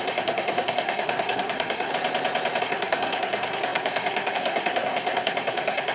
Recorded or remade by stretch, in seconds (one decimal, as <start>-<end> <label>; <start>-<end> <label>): 0.0-1.9 remade; 1.9-2.6 recorded; 2.6-5.9 remade